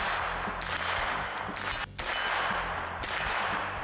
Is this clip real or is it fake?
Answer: real